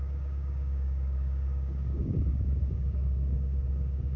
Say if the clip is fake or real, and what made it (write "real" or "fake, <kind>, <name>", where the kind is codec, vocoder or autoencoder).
fake, codec, DAC